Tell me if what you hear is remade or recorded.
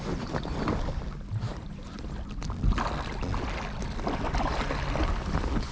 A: recorded